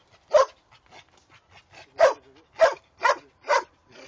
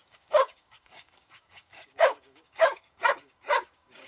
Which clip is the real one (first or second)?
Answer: first